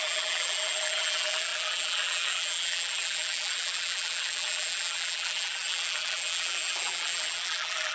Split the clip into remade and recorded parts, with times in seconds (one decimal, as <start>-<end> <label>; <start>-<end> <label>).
0.0-7.9 remade